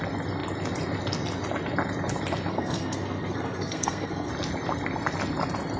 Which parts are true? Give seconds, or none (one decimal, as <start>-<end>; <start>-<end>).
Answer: 0.0-2.5; 4.3-5.8